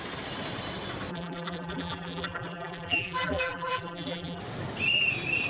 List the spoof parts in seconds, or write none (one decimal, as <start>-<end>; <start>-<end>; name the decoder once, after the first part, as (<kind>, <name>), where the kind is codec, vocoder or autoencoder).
1.1-4.4 (vocoder, BigVGAN v2)